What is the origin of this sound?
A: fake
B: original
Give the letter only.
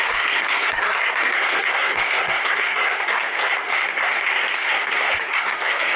A